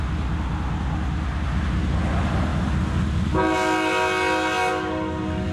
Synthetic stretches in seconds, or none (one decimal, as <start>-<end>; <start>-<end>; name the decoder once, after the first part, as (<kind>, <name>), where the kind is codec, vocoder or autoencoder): none